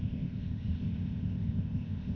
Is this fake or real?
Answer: fake